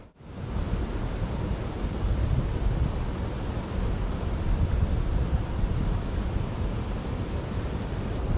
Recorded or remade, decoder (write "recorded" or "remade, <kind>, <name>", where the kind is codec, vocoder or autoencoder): recorded